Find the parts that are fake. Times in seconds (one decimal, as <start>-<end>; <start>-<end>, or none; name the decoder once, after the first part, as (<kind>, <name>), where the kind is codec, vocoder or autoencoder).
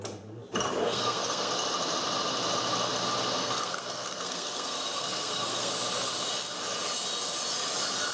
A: 0.8-1.5 (codec, SNAC); 3.4-5.7